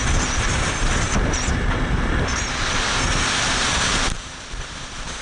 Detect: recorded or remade remade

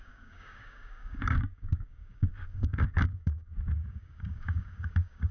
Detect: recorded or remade remade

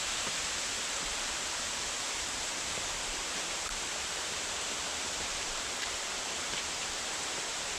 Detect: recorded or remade remade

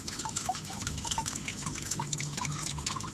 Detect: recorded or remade remade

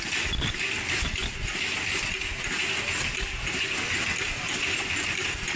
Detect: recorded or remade recorded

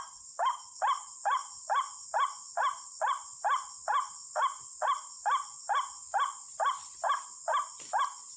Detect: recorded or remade recorded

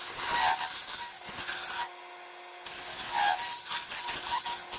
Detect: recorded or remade recorded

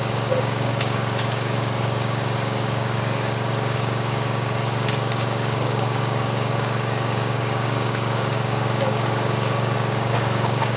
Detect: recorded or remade remade